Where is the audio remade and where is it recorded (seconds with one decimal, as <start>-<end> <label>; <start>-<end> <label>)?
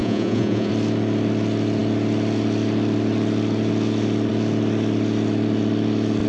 0.0-0.7 remade; 0.7-6.3 recorded